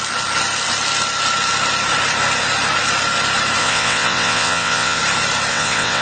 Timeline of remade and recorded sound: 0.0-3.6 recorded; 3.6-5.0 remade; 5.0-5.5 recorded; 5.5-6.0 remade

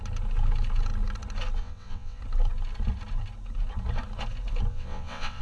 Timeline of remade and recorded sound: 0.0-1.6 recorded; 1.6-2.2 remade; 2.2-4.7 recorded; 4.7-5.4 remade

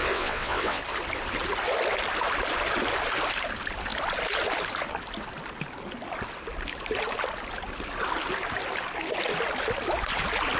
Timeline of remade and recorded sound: 0.0-0.8 remade; 0.8-10.6 recorded

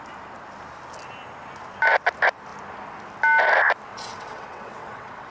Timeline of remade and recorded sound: 0.0-3.9 recorded; 3.9-5.3 remade

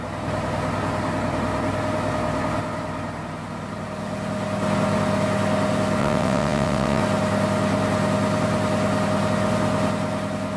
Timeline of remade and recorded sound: 0.0-6.0 recorded; 6.0-7.0 remade; 7.0-10.6 recorded

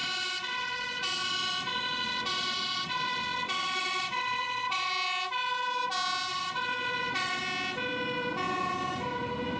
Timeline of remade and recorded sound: 0.0-4.9 remade; 4.9-6.3 recorded; 6.3-7.4 remade; 7.4-9.6 recorded

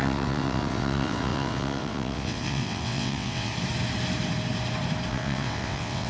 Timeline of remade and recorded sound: 0.0-3.5 remade; 3.5-5.1 recorded; 5.1-6.1 remade